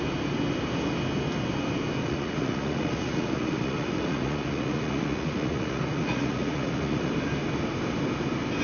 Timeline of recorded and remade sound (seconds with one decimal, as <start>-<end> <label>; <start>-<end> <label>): 0.0-2.0 recorded; 2.0-7.1 remade; 7.1-8.6 recorded